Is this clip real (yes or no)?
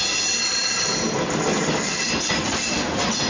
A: yes